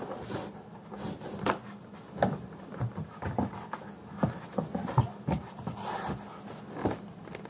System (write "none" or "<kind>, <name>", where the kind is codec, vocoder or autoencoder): none